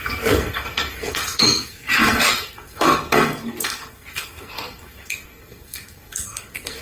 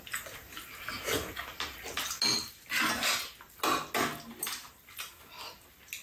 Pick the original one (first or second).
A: second